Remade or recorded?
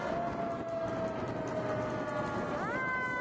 recorded